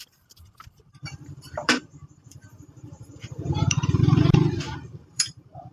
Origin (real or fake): fake